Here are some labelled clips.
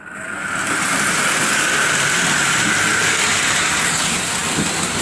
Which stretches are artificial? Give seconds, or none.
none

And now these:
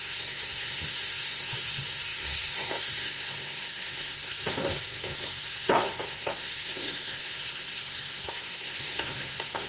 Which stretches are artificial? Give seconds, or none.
0.0-9.7

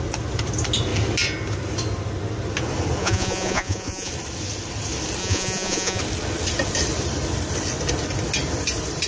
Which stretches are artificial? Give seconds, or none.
3.0-4.1; 5.2-6.0

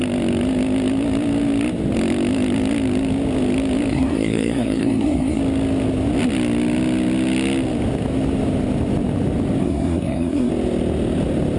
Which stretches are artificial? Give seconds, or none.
3.9-5.4; 9.6-10.5